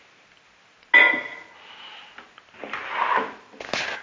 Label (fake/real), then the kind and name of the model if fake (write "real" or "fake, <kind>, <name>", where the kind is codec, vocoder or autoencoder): real